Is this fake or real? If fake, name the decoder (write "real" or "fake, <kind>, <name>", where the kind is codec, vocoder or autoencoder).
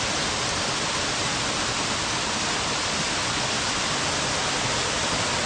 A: real